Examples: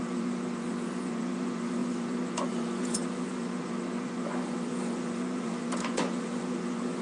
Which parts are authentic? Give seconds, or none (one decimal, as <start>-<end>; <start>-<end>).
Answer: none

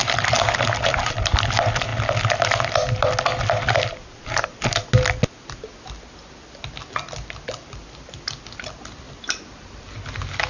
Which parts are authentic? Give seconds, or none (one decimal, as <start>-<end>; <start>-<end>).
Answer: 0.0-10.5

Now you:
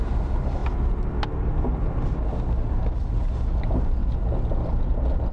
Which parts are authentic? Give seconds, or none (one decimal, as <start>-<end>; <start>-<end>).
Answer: 0.0-5.3

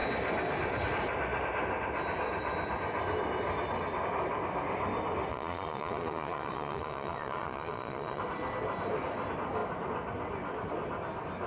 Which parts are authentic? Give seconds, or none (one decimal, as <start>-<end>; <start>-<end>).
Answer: 0.0-5.3; 8.2-11.5

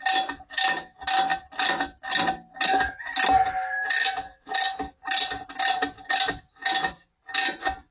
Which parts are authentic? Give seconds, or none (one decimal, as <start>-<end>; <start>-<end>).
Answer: 0.0-7.9

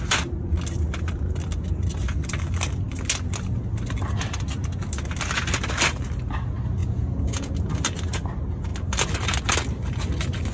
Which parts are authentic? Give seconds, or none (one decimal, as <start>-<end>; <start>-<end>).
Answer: 0.0-6.8; 7.5-10.5